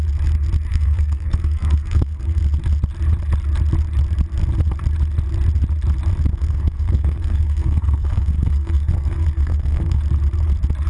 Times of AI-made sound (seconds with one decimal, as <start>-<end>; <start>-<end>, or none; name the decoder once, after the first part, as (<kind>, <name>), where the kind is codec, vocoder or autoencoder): 0.7-2.4 (codec, SNAC); 6.3-10.0